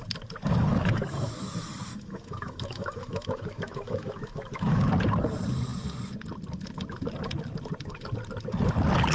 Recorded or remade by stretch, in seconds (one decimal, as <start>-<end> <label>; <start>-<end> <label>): 0.0-0.7 recorded; 0.7-4.9 remade; 4.9-9.1 recorded